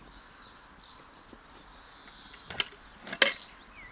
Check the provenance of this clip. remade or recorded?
recorded